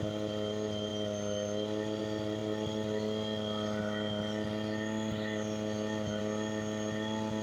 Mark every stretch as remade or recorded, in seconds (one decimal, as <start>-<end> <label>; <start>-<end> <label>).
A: 0.0-7.4 recorded